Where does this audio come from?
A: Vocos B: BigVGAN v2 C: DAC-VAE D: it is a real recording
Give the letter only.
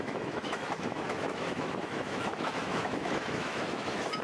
C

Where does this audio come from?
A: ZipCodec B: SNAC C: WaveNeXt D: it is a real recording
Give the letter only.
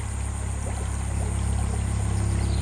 D